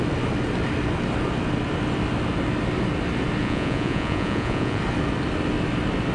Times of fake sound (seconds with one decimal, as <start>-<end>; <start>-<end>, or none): 3.4-4.8